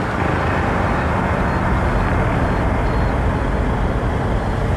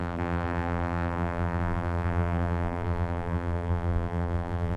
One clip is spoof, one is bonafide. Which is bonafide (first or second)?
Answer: first